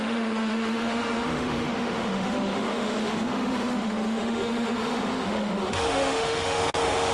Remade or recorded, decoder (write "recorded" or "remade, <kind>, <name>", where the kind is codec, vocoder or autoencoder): remade, autoencoder, DAC-VAE